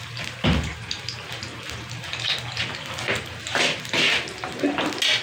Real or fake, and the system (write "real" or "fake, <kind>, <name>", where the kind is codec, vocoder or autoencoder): real